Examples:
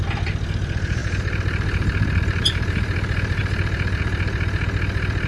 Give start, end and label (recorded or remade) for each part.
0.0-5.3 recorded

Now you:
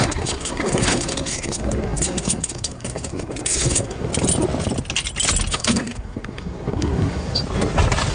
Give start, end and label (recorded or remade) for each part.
0.0-4.1 remade; 4.1-5.5 recorded; 5.5-7.4 remade; 7.4-8.1 recorded

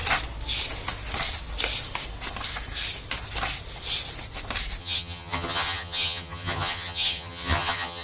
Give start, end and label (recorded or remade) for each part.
0.0-4.8 recorded; 4.8-8.0 remade